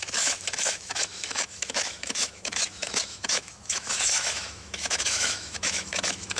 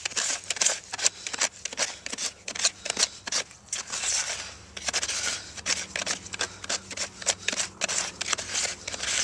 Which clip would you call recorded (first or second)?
second